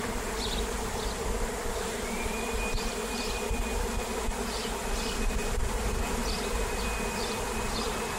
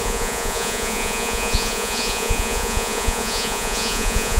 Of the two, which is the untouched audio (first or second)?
first